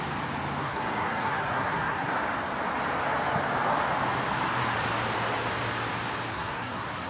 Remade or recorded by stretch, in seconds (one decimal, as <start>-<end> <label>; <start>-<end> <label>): 0.0-0.6 recorded; 0.6-2.2 remade; 2.2-6.3 recorded; 6.3-7.1 remade